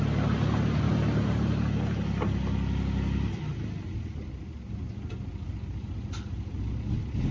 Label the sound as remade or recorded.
recorded